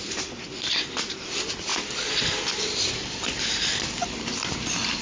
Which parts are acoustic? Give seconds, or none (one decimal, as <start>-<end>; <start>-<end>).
none